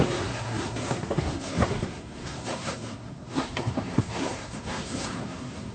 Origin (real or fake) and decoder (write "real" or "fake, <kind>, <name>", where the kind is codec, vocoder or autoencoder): fake, codec, SNAC